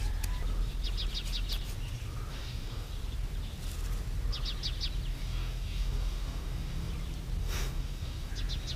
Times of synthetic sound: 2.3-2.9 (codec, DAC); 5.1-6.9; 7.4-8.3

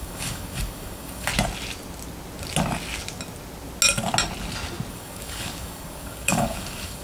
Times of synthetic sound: 0.0-1.3 (codec, DAC); 4.9-7.0

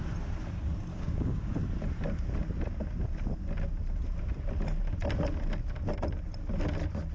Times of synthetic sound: 0.9-1.5 (codec, DAC)

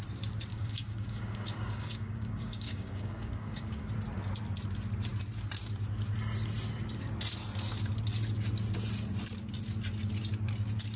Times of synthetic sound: 0.5-3.9 (codec, DAC)

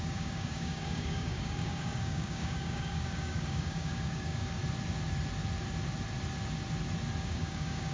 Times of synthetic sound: 0.0-4.6 (codec, DAC); 7.2-7.9

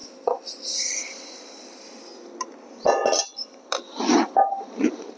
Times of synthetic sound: none

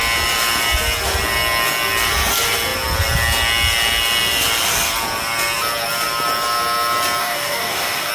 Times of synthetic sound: 7.2-8.1 (codec, DAC)

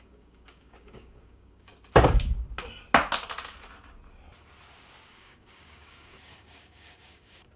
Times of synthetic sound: 0.0-1.7 (codec, DAC); 5.1-7.6